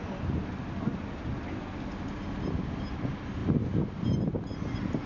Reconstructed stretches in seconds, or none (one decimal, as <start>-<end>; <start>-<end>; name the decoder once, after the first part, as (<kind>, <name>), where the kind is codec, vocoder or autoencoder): none